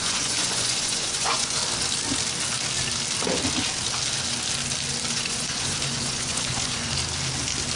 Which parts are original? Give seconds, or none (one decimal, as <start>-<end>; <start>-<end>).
1.6-5.1; 7.0-7.8